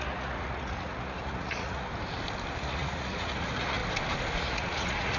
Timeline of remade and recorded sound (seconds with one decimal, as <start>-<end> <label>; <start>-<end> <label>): 0.0-1.9 remade; 1.9-2.5 recorded; 2.5-3.8 remade; 3.8-4.4 recorded; 4.4-5.2 remade